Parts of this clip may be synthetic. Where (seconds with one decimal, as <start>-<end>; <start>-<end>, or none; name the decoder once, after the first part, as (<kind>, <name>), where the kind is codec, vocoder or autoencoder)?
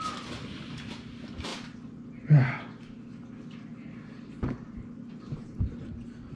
none